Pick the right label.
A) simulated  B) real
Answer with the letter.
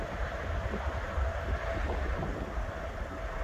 B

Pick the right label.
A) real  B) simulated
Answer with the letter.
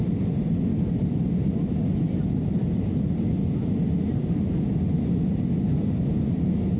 A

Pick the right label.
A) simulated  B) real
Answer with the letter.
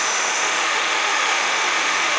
A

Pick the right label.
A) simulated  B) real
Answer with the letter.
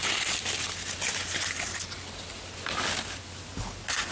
B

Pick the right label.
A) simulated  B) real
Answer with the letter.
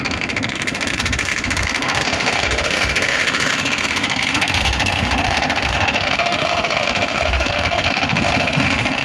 A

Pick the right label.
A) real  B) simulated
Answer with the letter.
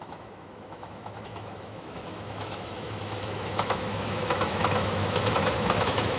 B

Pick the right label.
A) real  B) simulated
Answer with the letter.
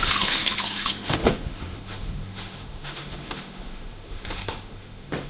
B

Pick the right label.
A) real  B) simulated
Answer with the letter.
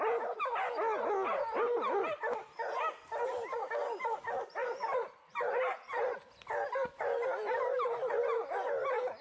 A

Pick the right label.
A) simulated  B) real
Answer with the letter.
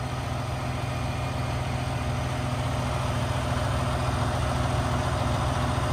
B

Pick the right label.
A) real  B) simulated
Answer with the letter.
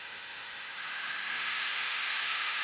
B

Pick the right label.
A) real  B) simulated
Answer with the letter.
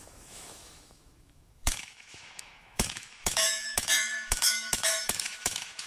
B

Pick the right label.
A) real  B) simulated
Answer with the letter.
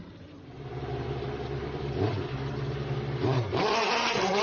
A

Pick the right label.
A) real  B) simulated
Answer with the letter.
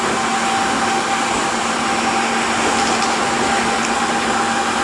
A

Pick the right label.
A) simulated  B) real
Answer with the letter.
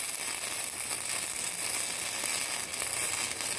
B